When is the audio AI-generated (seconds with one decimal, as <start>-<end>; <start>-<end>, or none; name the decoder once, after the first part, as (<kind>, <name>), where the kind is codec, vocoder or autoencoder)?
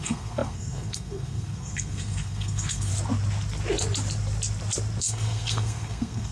0.0-2.9 (codec, SNAC); 5.0-6.3